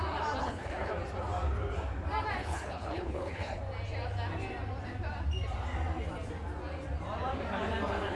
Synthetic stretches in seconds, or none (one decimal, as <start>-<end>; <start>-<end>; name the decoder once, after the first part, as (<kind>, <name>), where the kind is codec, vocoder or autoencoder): 0.4-0.9 (codec, HILCodec); 2.4-3.6